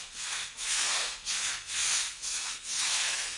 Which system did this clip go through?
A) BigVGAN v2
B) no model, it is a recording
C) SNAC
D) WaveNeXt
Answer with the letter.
C